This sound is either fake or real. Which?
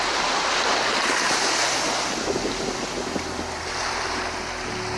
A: real